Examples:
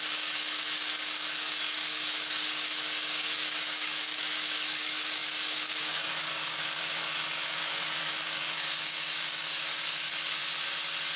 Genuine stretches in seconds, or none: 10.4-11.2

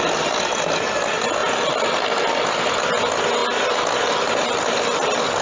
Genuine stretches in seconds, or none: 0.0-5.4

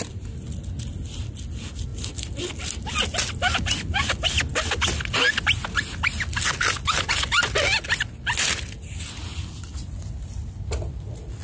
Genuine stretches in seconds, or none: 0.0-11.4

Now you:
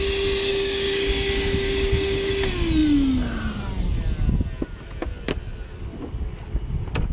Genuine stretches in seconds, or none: 0.0-0.5; 2.3-7.1

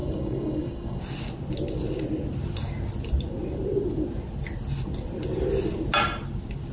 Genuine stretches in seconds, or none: 1.0-6.7

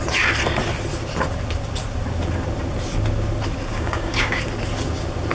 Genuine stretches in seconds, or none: 0.0-3.7; 4.4-5.3

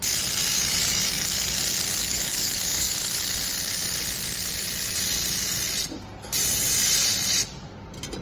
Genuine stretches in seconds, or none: 0.0-0.5; 1.6-2.0; 3.2-8.2

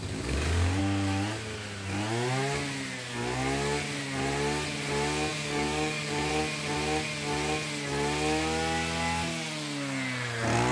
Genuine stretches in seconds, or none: 0.8-5.3; 6.3-10.7